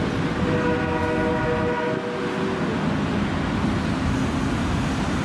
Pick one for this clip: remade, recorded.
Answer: recorded